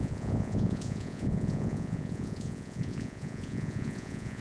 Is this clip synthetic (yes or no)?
yes